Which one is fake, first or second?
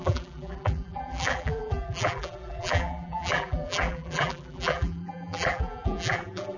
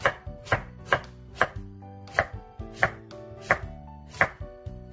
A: first